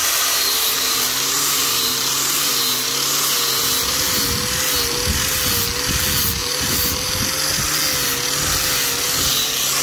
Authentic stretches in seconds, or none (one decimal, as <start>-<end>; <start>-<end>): 2.5-6.4; 7.1-9.8